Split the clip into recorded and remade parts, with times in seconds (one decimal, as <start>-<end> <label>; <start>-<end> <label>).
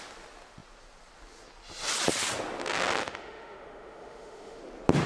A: 0.0-3.0 recorded; 3.0-4.6 remade; 4.6-5.1 recorded